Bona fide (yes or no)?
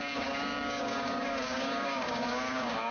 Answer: no